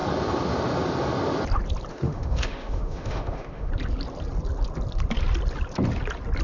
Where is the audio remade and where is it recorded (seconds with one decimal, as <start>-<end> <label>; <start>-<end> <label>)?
0.0-1.9 recorded; 1.9-3.7 remade; 3.7-6.4 recorded